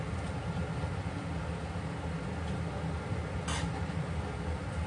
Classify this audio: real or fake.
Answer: real